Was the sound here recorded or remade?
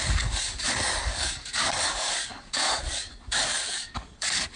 remade